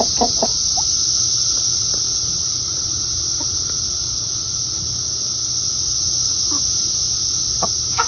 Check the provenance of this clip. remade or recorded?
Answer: recorded